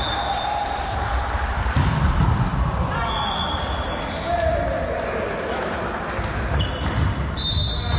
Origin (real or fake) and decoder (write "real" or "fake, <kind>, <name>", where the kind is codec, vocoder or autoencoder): real